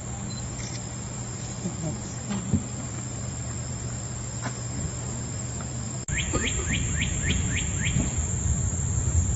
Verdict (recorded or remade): remade